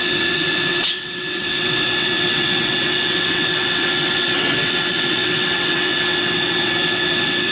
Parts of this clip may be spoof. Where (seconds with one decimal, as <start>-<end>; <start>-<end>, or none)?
0.0-7.5